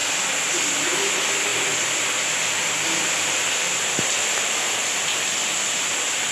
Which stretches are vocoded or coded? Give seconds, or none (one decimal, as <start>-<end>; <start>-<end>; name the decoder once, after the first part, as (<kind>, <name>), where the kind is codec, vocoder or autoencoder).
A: 1.5-4.7 (vocoder, BigVGAN v2)